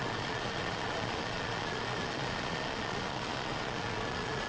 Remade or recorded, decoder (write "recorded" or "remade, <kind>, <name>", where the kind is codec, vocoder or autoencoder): remade, vocoder, Vocos